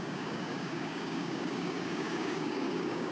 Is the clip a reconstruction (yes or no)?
yes